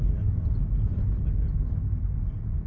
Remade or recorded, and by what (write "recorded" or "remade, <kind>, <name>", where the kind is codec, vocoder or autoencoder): recorded